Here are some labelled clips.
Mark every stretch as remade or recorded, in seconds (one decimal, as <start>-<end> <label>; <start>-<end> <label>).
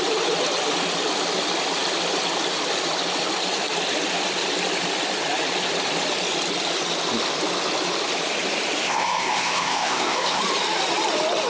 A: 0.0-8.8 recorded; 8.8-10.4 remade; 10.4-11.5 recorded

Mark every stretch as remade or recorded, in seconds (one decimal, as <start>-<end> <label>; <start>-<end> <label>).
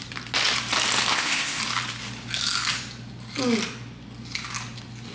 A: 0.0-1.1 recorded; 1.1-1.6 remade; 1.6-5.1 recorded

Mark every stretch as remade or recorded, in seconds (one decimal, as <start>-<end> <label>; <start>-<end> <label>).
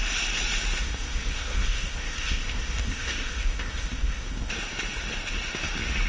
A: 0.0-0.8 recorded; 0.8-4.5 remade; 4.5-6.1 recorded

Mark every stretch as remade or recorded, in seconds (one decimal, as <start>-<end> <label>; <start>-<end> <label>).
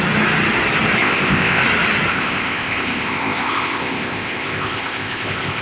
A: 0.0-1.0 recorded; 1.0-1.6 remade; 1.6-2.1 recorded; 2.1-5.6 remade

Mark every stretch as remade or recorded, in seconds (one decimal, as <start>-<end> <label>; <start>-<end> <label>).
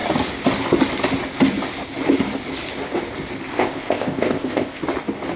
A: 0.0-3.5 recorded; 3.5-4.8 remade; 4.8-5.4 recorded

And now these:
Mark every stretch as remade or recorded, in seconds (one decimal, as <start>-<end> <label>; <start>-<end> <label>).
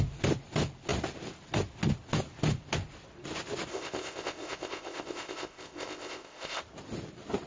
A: 0.0-3.7 recorded; 3.7-6.6 remade; 6.6-7.5 recorded